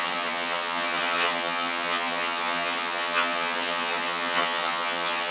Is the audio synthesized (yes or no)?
yes